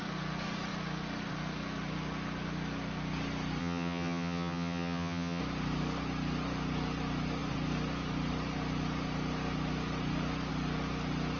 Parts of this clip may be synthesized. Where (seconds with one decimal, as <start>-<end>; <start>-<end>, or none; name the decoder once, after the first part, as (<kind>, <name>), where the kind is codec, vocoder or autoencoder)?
3.6-5.4 (vocoder, HiFi-GAN)